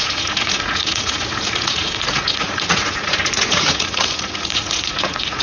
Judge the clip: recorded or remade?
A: remade